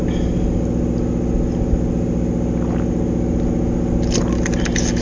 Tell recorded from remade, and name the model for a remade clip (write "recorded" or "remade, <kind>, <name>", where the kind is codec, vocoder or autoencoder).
recorded